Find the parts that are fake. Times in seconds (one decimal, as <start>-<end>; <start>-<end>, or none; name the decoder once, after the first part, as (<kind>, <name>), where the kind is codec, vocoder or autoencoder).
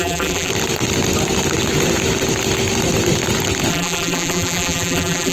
0.0-0.5 (vocoder, BigVGAN v2); 3.7-5.3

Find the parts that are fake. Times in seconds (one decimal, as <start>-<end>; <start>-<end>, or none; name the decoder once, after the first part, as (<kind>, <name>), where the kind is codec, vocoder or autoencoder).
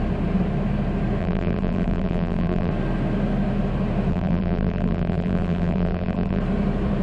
1.2-2.7 (vocoder, BigVGAN v2); 4.1-6.4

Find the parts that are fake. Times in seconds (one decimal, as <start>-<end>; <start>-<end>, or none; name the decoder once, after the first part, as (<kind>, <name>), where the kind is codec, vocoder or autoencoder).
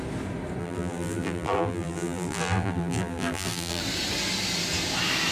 0.6-3.8 (vocoder, BigVGAN v2)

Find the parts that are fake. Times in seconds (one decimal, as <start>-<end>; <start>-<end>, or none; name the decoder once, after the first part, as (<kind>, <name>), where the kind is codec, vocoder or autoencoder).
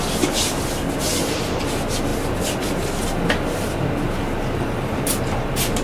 none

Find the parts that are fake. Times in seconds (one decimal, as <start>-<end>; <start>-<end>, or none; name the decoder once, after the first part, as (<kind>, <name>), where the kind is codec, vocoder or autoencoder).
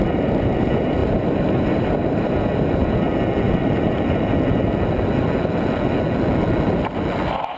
1.0-2.3 (vocoder, BigVGAN v2); 3.6-4.3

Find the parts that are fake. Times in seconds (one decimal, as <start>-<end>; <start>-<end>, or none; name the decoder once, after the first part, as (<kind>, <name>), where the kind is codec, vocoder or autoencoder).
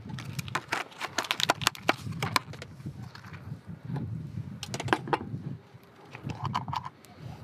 2.4-4.6 (vocoder, BigVGAN v2); 5.1-5.9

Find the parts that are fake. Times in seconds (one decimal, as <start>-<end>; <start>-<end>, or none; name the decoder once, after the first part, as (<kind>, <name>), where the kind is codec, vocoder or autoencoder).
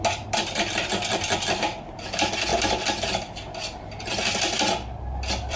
0.0-2.5 (vocoder, BigVGAN v2); 3.2-5.6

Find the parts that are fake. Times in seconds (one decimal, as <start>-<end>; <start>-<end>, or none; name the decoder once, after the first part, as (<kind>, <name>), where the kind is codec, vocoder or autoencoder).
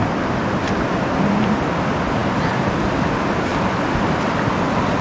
none